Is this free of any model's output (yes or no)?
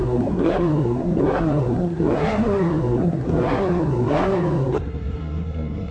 no